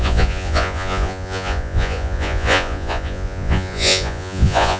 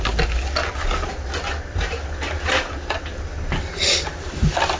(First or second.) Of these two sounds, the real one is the second